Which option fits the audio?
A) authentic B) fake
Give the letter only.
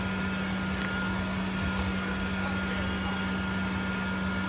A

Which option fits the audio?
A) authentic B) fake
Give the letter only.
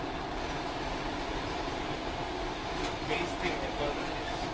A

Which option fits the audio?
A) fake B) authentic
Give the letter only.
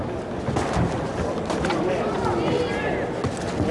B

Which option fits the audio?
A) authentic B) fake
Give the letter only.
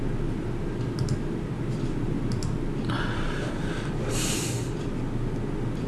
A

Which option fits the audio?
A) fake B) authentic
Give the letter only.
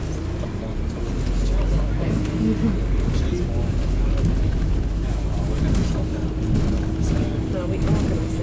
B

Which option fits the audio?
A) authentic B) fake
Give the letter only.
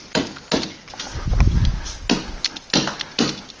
A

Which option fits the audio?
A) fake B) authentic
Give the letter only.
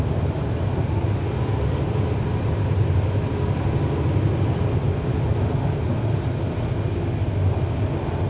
B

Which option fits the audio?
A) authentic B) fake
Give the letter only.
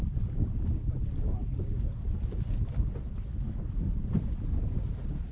A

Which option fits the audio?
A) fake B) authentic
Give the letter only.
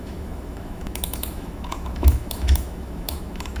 A